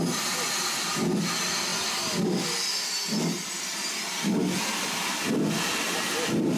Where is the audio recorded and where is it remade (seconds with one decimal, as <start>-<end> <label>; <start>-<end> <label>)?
0.0-6.6 recorded